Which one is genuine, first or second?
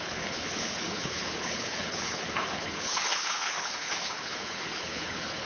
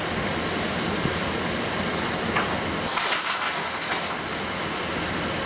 second